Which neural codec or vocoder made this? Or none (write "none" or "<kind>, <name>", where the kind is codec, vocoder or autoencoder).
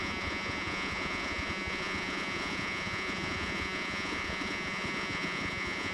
vocoder, Vocos